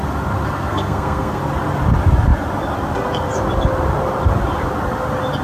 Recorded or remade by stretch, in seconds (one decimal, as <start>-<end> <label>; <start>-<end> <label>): 0.0-0.7 recorded; 0.7-1.4 remade; 1.4-5.4 recorded